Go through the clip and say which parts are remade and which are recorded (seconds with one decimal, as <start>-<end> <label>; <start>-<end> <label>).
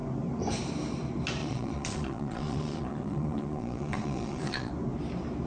0.0-1.4 recorded; 1.4-4.7 remade; 4.7-5.5 recorded